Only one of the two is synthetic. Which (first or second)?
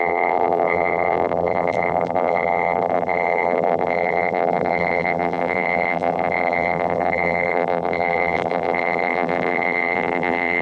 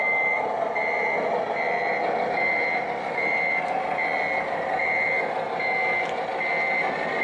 first